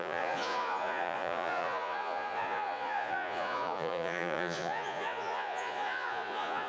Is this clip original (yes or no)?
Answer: no